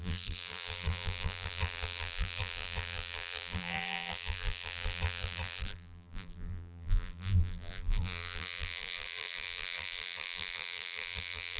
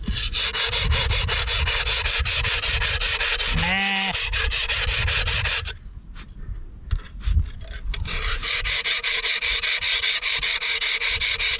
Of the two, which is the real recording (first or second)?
second